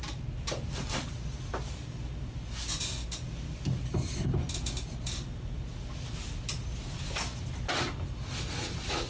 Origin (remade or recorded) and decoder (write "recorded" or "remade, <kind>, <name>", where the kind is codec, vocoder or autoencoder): recorded